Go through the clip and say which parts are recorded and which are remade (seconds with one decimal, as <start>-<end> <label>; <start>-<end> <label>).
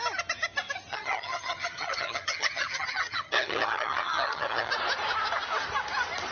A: 0.0-0.9 recorded; 0.9-4.7 remade; 4.7-6.3 recorded